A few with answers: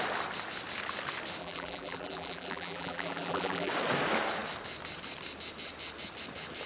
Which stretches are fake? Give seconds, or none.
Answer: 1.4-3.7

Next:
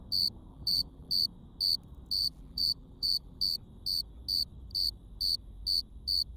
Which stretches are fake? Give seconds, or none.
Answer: 0.5-1.1; 2.2-3.4

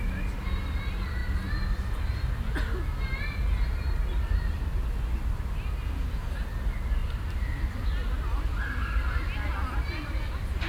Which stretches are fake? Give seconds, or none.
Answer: 7.0-7.7

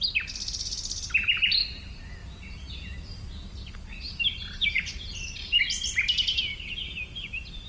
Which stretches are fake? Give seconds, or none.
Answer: 2.2-5.6; 6.5-7.7

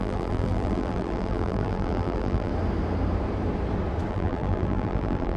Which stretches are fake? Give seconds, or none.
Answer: 0.0-2.5; 4.1-5.4